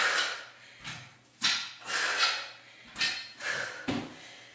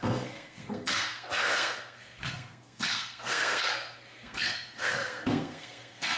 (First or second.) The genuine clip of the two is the first